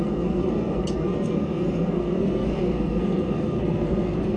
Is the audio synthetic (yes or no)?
yes